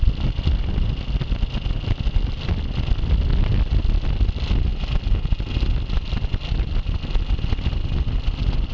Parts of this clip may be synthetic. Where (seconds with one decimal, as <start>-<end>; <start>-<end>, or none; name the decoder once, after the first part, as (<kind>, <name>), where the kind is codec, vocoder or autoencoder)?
none